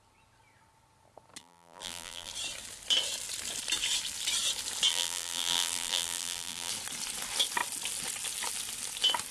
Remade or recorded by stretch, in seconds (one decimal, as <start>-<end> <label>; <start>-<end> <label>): 0.0-1.4 recorded; 1.4-2.3 remade; 2.3-4.9 recorded; 4.9-6.7 remade; 6.7-9.3 recorded